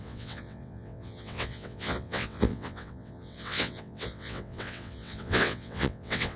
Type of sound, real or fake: fake